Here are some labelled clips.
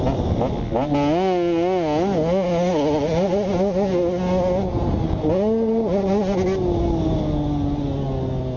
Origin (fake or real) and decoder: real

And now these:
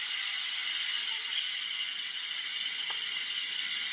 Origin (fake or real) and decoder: real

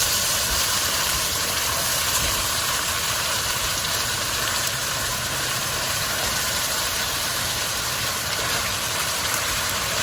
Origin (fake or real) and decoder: fake, vocoder, BigVGAN v2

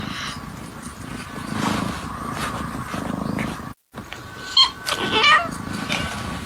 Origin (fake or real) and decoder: real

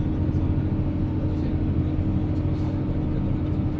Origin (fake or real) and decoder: real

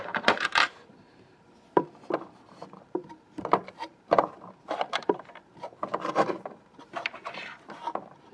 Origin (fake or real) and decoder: fake, vocoder, BigVGAN v2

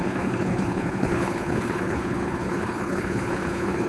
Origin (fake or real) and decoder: fake, codec, HILCodec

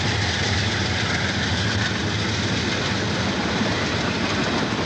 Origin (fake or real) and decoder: real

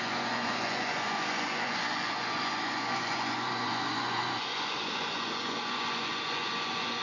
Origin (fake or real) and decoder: fake, vocoder, Vocos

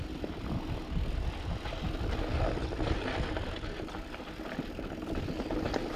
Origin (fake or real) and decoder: real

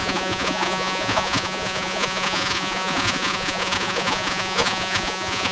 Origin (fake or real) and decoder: fake, vocoder, Vocos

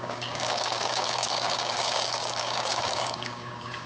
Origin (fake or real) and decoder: fake, codec, DAC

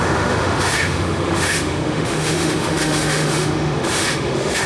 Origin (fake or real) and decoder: fake, autoencoder, DAC-VAE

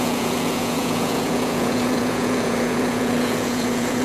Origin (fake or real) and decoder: fake, vocoder, Vocos